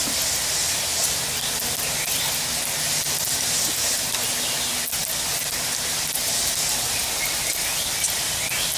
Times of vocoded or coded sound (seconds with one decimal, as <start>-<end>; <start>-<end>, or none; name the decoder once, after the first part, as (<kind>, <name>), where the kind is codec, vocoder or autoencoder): none

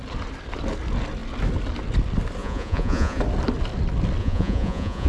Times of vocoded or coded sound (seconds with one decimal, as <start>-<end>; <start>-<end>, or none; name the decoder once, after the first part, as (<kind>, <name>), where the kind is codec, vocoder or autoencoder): 2.4-3.2 (vocoder, Vocos); 4.2-5.1

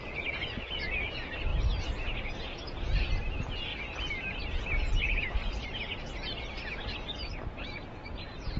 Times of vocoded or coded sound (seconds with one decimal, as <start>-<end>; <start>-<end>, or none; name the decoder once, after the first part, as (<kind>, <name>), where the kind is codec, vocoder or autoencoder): 0.0-1.5 (vocoder, Vocos); 2.3-3.7; 5.0-5.4; 7.5-8.6

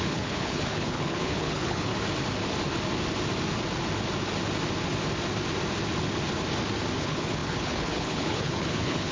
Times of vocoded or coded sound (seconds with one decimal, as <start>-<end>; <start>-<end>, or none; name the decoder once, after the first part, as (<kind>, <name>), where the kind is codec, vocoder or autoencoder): 0.0-1.9 (codec, HILCodec); 7.0-9.1